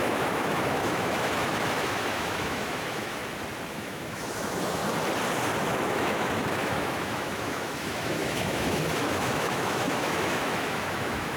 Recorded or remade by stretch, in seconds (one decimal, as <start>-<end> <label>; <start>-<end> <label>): 0.0-3.2 remade; 3.2-3.7 recorded; 3.7-4.8 remade; 4.8-5.6 recorded; 5.6-11.4 remade